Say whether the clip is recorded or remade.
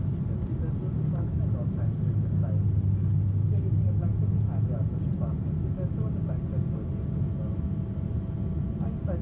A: recorded